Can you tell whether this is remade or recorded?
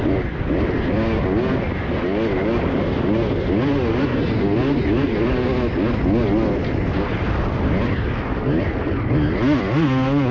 recorded